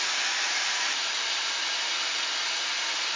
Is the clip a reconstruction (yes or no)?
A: no